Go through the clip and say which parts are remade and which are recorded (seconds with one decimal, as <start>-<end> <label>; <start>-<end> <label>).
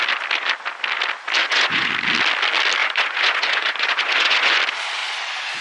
0.0-1.4 recorded; 1.4-1.9 remade; 1.9-2.8 recorded; 2.8-4.6 remade; 4.6-5.6 recorded